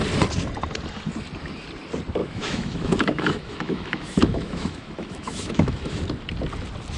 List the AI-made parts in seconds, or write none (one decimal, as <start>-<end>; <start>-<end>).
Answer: 2.2-5.9